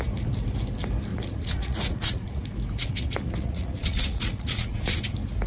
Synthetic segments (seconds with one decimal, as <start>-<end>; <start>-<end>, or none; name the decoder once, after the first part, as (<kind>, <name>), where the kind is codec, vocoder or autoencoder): 1.1-2.4 (vocoder, Vocos); 2.8-5.0